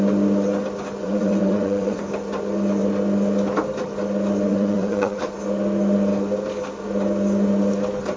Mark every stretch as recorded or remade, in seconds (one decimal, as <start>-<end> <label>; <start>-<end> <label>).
0.0-1.0 recorded; 1.0-2.0 remade; 2.0-4.5 recorded; 4.5-5.3 remade; 5.3-8.2 recorded

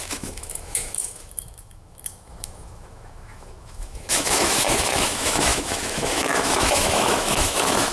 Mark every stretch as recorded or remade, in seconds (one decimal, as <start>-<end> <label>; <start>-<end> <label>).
0.0-7.9 remade

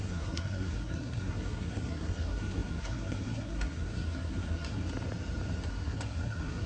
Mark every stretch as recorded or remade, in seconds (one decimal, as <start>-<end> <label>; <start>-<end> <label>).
0.0-4.8 remade; 4.8-5.7 recorded; 5.7-6.7 remade